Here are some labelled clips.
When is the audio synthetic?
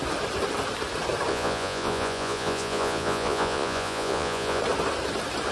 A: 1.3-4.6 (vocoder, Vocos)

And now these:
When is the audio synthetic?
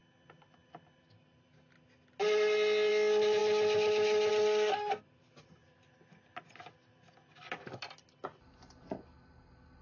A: none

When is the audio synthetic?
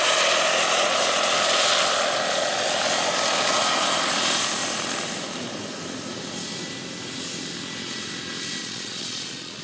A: 8.6-9.6 (vocoder, Vocos)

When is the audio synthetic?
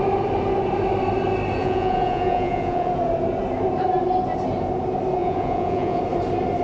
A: 1.6-2.9 (vocoder, Vocos); 5.2-6.0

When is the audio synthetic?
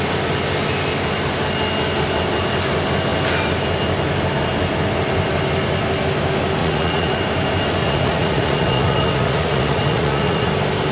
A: 6.6-7.2 (vocoder, Vocos); 7.8-10.5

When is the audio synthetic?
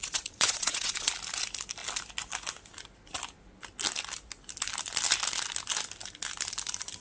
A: 0.0-1.1 (vocoder, Vocos)